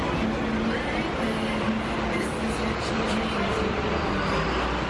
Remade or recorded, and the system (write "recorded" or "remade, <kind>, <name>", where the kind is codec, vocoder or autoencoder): recorded